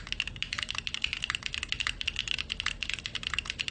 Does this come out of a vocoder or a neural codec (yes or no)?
no